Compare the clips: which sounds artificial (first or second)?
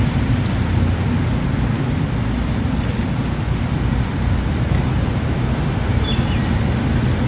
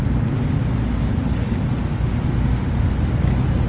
first